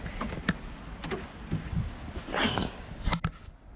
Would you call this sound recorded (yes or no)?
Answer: yes